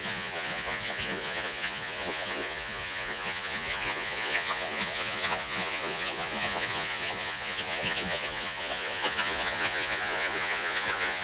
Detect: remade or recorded remade